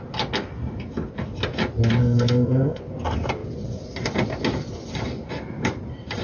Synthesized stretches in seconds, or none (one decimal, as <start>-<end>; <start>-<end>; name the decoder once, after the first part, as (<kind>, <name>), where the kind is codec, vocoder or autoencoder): 2.0-2.8 (codec, SNAC)